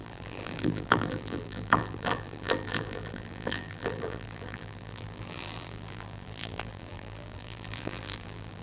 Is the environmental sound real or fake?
fake